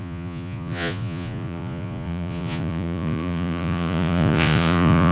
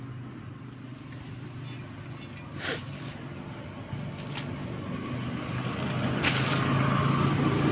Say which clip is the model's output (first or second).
first